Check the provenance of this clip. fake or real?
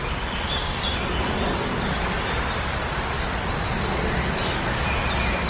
real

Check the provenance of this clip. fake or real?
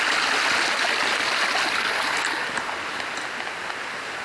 real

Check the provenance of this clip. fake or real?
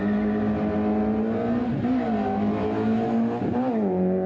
real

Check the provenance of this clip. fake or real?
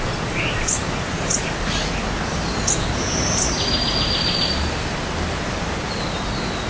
real